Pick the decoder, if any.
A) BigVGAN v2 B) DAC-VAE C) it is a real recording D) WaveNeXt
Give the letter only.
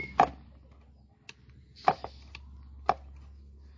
C